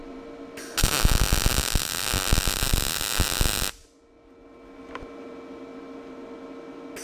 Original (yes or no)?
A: yes